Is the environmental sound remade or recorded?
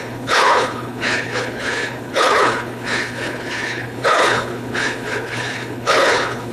remade